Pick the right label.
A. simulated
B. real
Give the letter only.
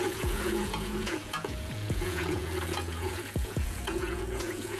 A